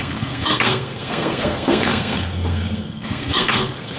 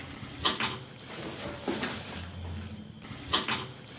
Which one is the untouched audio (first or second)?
second